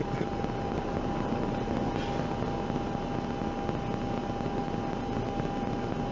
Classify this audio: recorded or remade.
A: recorded